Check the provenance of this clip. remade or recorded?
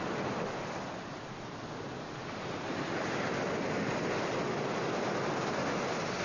recorded